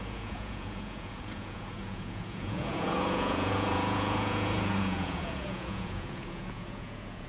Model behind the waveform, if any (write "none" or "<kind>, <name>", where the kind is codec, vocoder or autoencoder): vocoder, Vocos